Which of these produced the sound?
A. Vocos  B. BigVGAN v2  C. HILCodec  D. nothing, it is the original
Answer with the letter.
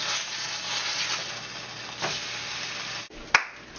D